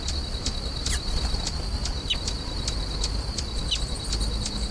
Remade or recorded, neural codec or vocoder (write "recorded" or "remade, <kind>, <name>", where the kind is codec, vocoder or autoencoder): recorded